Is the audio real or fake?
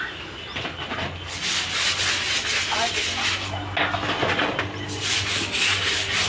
real